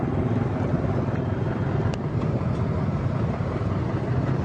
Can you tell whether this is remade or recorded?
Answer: remade